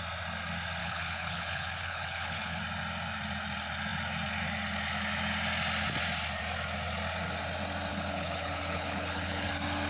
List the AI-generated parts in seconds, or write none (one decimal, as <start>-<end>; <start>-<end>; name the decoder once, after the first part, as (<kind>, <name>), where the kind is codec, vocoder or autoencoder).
0.8-2.6 (codec, HILCodec); 7.9-9.5